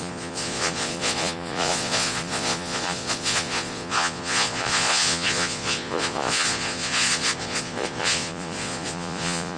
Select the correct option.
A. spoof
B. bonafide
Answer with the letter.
A